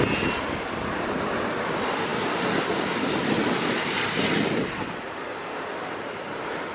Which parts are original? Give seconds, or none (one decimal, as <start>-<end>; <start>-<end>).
0.0-6.7